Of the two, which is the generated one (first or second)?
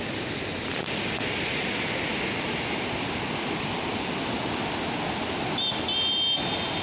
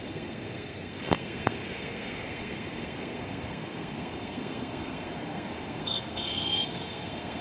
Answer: second